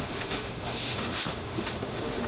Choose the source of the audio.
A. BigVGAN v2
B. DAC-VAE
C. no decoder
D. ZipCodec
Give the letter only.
B